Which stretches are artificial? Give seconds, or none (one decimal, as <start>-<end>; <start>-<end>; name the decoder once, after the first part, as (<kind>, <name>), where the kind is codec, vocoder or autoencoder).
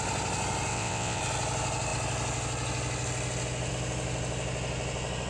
0.7-1.2 (vocoder, WaveNeXt)